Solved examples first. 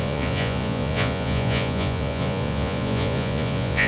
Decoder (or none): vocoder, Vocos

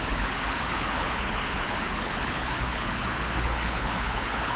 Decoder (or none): codec, HILCodec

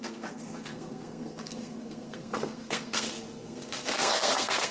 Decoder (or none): codec, SNAC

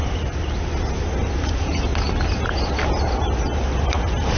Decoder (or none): none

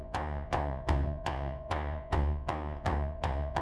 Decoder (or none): vocoder, Vocos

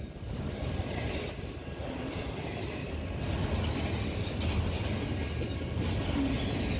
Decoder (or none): none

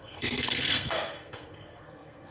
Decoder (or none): codec, SNAC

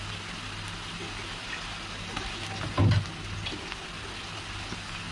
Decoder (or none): none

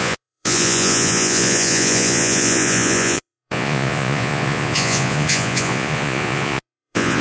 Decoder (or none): vocoder, Vocos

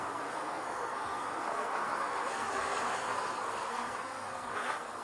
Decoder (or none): codec, SNAC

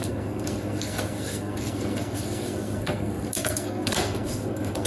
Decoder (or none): codec, SNAC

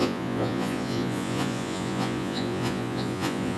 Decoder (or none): vocoder, Vocos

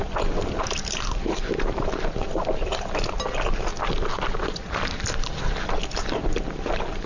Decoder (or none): none